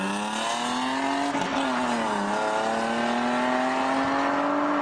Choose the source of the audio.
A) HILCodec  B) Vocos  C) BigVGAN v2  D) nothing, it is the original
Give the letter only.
D